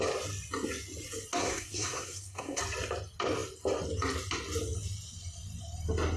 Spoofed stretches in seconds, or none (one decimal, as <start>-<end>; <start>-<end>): 1.4-2.6